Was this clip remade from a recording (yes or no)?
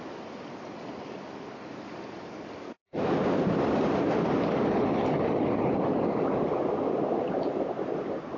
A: no